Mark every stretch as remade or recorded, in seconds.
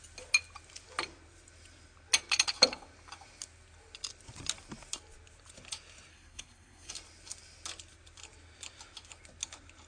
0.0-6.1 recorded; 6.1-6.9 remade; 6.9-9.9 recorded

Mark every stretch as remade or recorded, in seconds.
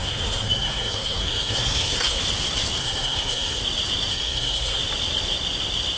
0.0-2.2 remade; 2.2-2.8 recorded; 2.8-3.6 remade; 3.6-4.1 recorded; 4.1-4.8 remade; 4.8-6.0 recorded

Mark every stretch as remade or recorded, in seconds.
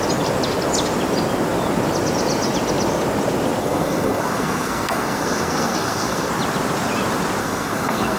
0.0-3.6 recorded; 3.6-6.3 remade; 6.3-7.4 recorded; 7.4-8.2 remade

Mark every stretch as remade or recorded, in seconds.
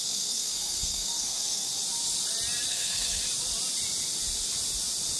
0.0-1.7 remade; 1.7-2.7 recorded; 2.7-3.2 remade; 3.2-5.2 recorded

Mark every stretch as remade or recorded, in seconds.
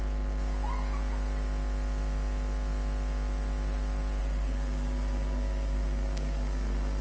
0.0-4.2 recorded; 4.2-7.0 remade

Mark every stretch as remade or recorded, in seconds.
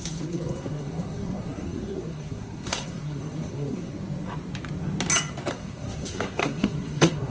0.0-3.9 remade; 3.9-5.5 recorded; 5.5-7.3 remade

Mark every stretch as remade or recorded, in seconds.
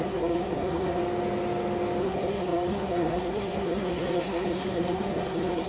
0.0-1.0 remade; 1.0-2.0 recorded; 2.0-5.7 remade